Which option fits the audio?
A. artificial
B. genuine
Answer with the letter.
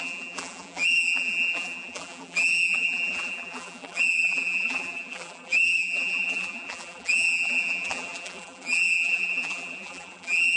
A